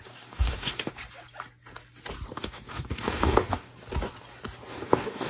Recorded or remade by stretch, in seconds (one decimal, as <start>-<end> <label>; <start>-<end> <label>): 0.0-1.0 remade; 1.0-2.3 recorded; 2.3-3.7 remade; 3.7-4.7 recorded; 4.7-5.3 remade